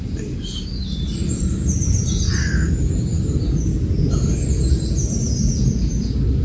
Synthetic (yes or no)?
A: no